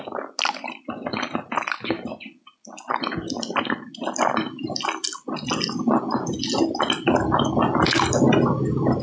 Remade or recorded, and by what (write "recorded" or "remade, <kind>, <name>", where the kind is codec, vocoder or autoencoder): recorded